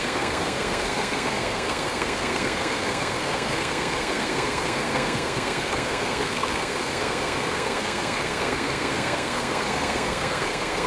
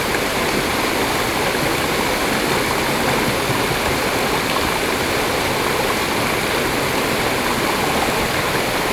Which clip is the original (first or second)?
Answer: second